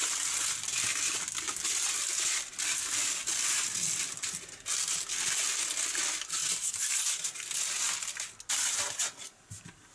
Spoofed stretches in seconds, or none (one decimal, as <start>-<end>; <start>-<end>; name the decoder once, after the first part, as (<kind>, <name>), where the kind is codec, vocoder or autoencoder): none